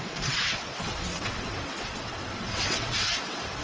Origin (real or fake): fake